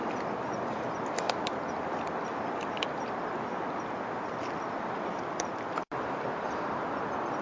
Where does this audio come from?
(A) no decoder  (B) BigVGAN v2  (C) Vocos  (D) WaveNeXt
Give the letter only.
A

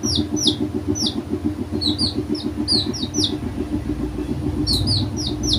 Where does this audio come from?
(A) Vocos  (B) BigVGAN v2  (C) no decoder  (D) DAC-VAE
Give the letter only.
C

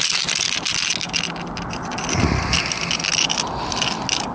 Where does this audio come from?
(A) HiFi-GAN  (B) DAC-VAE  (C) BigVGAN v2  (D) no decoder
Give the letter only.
D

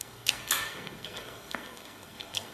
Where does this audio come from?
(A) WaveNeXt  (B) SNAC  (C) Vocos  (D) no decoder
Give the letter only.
B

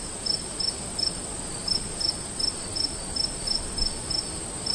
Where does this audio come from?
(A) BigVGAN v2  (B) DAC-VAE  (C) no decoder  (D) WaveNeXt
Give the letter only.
A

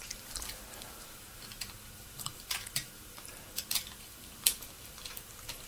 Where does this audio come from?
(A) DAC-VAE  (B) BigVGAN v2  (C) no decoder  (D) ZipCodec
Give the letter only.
B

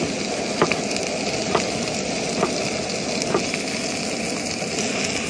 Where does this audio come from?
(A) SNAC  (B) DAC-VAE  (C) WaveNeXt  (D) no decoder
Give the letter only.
D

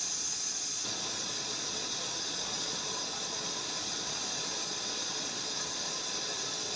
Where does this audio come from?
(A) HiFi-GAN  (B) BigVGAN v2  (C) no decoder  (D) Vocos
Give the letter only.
D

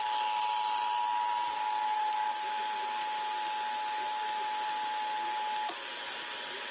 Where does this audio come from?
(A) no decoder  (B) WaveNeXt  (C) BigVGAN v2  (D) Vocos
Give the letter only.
A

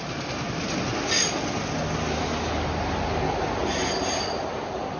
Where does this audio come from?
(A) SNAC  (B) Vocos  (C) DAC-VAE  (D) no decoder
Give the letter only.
D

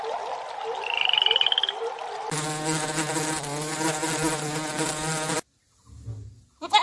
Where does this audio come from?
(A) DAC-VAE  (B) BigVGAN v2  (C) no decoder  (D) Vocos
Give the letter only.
C